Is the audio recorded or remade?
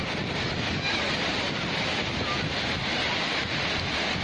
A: recorded